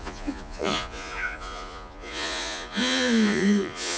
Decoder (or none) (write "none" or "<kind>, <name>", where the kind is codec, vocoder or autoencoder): vocoder, Vocos